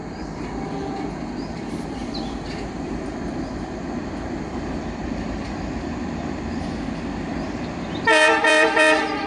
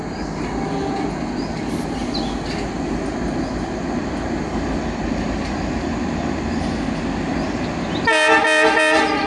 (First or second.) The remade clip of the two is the first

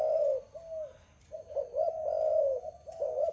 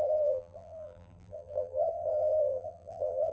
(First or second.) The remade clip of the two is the second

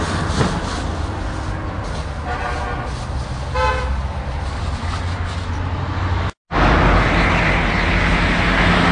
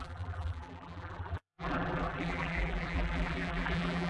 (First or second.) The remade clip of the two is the second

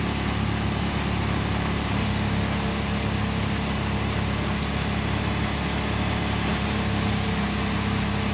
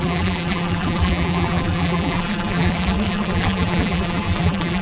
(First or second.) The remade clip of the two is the second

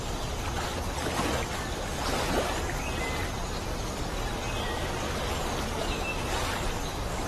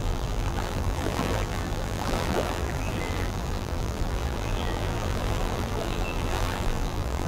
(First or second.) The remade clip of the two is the second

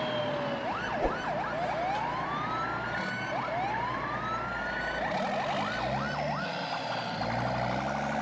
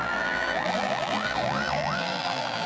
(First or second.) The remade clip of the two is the second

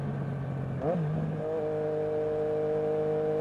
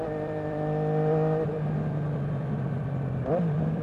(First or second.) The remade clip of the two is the second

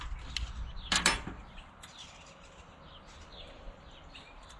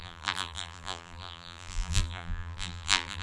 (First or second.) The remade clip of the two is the second